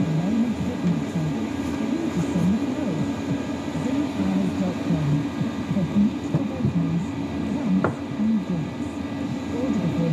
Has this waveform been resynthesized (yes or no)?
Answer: no